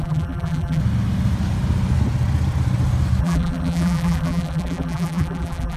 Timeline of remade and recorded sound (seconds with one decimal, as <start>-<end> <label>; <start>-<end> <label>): 0.0-0.8 remade; 0.8-3.2 recorded; 3.2-5.8 remade